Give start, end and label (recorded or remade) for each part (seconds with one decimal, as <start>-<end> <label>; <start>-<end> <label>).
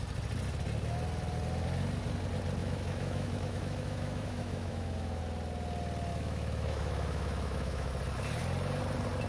0.0-2.6 recorded; 2.6-5.2 remade; 5.2-6.1 recorded; 6.1-7.9 remade; 7.9-9.3 recorded